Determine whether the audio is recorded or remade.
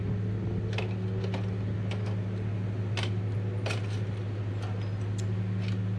recorded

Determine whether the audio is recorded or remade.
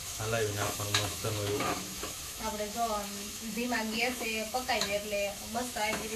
remade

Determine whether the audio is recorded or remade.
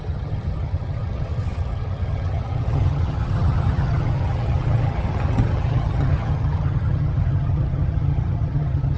remade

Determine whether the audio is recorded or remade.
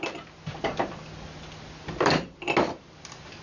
recorded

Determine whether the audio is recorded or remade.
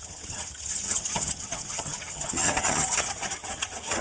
remade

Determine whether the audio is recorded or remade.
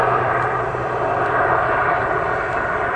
remade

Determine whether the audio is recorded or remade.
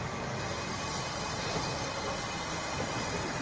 recorded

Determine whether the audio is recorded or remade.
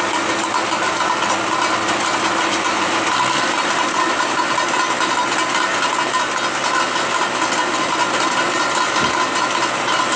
recorded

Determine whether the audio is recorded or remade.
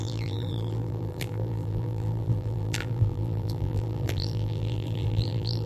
remade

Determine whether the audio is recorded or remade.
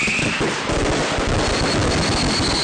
recorded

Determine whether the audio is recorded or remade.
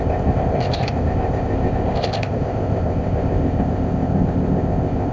remade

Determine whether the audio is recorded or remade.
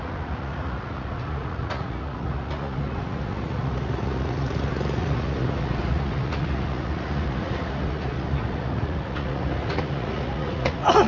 remade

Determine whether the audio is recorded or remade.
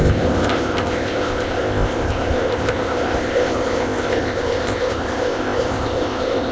remade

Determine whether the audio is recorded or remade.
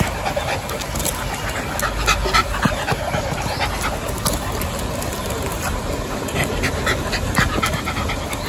recorded